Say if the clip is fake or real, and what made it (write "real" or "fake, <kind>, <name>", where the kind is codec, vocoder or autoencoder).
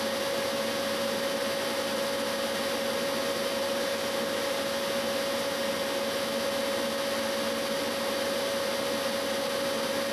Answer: real